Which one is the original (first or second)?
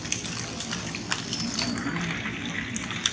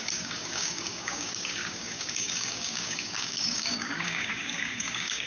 first